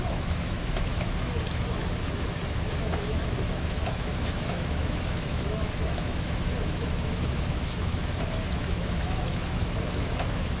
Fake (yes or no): yes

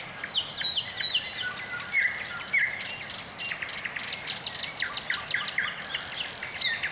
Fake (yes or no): no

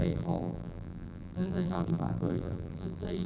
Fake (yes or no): yes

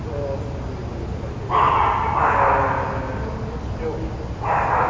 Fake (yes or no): no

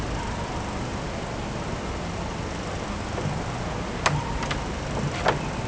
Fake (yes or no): no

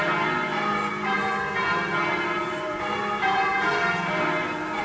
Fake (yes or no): yes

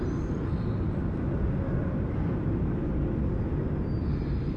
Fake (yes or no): no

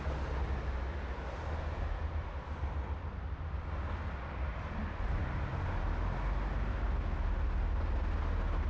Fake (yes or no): no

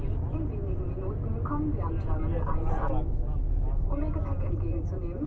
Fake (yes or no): no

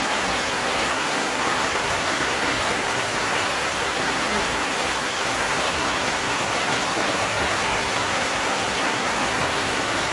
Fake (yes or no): yes